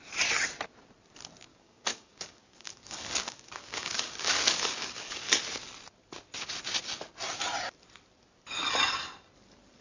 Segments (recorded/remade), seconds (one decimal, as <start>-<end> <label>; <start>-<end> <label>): 0.0-1.5 recorded; 1.5-5.4 remade; 5.4-9.8 recorded